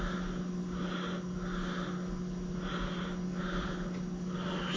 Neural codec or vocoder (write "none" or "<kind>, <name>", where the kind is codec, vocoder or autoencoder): none